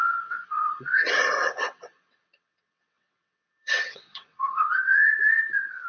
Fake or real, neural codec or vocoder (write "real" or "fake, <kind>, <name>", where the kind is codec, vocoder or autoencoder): fake, vocoder, WaveNeXt